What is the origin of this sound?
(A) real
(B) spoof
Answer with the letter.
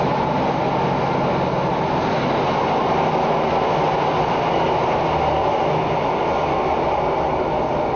A